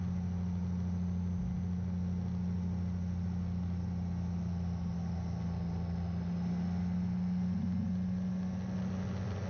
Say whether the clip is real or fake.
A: real